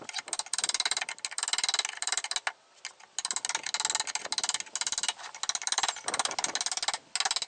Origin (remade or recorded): recorded